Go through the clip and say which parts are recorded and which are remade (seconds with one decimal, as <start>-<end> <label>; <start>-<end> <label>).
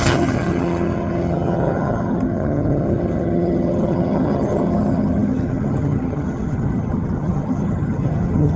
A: 0.0-8.6 remade